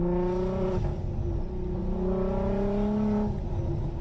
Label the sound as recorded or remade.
recorded